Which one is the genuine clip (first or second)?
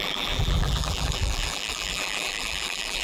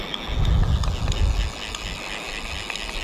second